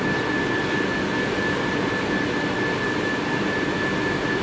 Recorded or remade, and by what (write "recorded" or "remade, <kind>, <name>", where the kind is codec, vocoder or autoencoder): recorded